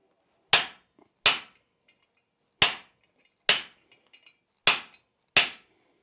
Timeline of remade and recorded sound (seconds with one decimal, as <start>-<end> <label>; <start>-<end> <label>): 0.0-6.0 recorded